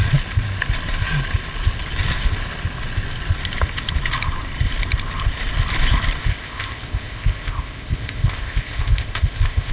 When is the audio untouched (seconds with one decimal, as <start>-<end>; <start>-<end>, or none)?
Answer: 0.0-6.2